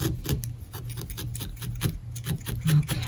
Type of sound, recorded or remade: recorded